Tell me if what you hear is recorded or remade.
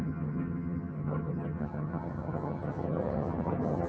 remade